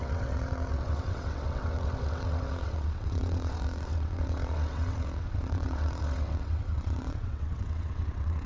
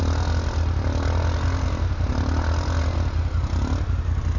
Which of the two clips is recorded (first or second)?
second